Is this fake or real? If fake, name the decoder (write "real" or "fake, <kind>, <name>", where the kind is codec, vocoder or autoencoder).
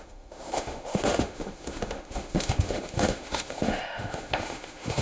fake, autoencoder, DAC-VAE